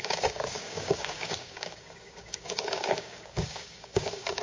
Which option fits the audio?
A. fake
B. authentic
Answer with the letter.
A